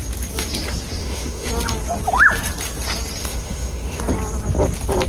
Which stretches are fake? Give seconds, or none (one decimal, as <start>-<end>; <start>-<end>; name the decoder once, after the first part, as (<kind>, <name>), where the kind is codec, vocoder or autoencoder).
1.0-1.5 (autoencoder, DAC-VAE); 3.2-4.0